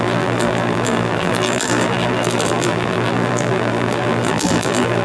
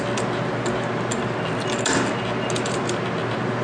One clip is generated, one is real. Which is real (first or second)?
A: second